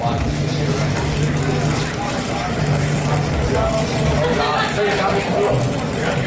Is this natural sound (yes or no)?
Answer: yes